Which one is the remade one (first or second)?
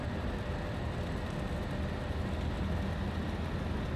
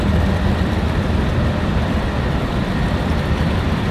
second